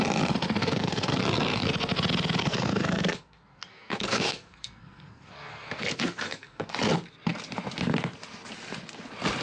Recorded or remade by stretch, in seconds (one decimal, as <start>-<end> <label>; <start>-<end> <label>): 0.0-0.6 recorded; 0.6-1.2 remade; 1.2-2.4 recorded; 2.4-6.7 remade; 6.7-9.4 recorded